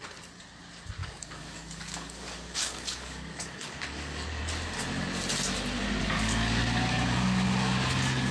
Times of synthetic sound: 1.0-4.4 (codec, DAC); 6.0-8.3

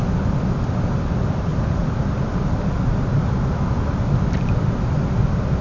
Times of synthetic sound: none

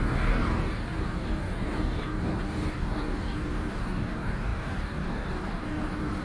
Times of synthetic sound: 0.0-6.2 (codec, DAC)

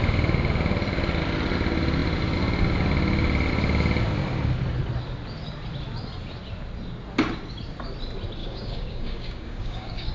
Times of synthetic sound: 8.4-10.1 (codec, DAC)

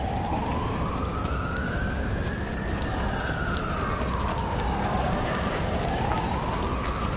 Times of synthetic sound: 1.1-2.3 (codec, DAC); 4.3-5.6

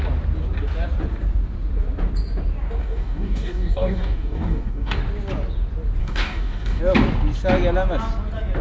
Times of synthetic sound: 2.8-5.0 (codec, DAC); 6.0-6.8

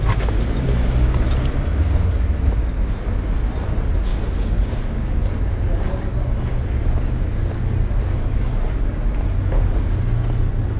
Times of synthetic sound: 4.1-5.2 (codec, DAC)

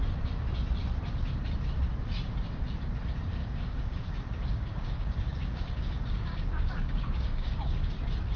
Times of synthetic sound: 3.4-7.9 (codec, DAC)